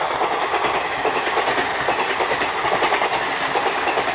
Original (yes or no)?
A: yes